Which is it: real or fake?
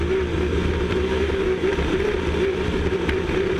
real